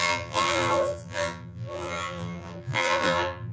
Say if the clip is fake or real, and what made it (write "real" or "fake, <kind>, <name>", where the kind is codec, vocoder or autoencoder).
fake, vocoder, BigVGAN v2